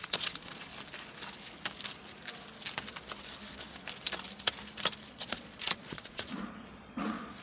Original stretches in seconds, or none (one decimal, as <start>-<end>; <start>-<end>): 0.7-5.1